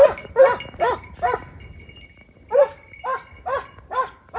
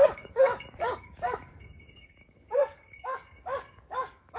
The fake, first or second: second